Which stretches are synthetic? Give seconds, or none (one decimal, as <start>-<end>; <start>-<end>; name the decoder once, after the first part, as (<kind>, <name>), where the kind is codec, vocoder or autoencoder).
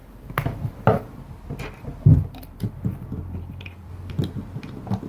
0.0-1.2 (vocoder, BigVGAN v2); 2.1-3.9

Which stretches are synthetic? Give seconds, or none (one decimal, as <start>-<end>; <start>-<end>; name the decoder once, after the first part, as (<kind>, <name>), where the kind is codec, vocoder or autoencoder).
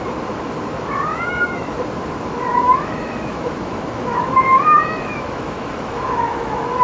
1.1-1.7 (autoencoder, DAC-VAE); 2.5-6.8